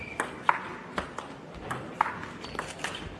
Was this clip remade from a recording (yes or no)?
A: no